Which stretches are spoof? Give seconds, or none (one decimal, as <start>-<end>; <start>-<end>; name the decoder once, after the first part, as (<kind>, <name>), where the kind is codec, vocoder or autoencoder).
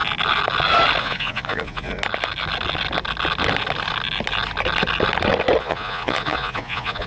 1.0-1.9 (vocoder, Vocos); 5.6-7.1